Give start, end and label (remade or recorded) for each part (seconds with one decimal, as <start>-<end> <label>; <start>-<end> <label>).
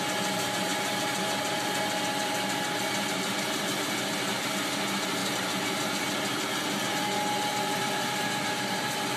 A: 0.0-9.2 recorded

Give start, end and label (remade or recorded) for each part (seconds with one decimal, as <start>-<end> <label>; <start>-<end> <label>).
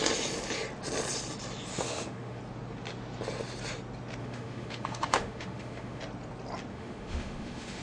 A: 0.0-1.7 recorded; 1.7-2.4 remade; 2.4-4.2 recorded; 4.2-6.0 remade; 6.0-6.7 recorded; 6.7-7.8 remade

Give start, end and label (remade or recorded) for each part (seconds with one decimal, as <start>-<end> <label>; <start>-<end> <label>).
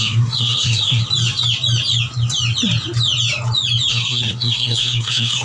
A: 0.0-1.0 remade; 1.0-3.9 recorded; 3.9-5.4 remade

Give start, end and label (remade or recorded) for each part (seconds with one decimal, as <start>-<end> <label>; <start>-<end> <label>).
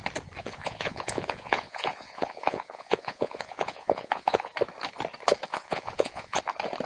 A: 0.0-0.4 recorded; 0.4-4.5 remade; 4.5-5.5 recorded; 5.5-6.4 remade; 6.4-6.9 recorded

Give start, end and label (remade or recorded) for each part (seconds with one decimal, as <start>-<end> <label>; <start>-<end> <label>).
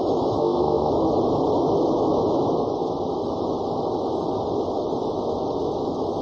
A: 0.0-0.4 recorded; 0.4-0.9 remade; 0.9-6.2 recorded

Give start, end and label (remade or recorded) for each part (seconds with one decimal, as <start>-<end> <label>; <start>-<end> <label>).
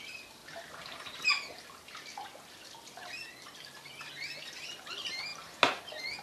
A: 0.0-6.2 recorded